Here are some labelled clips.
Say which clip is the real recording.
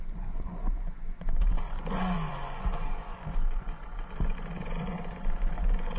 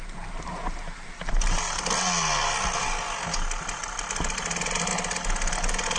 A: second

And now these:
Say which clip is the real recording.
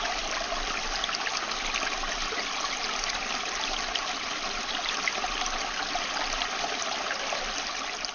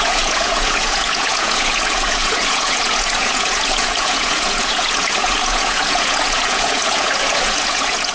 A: first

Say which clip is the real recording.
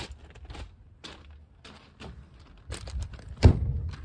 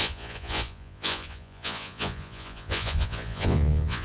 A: first